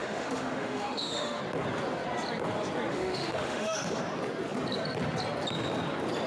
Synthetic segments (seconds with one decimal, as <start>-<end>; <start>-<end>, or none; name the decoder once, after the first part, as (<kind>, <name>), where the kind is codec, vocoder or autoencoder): 0.0-1.4 (autoencoder, DAC-VAE); 2.9-4.0